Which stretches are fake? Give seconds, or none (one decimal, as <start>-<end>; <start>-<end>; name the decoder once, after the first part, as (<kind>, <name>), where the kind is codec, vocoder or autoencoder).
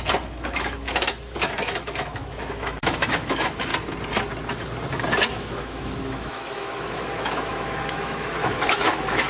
0.0-3.7 (autoencoder, DAC-VAE); 5.3-9.3